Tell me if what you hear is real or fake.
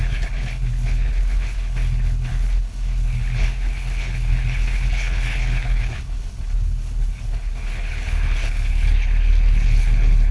fake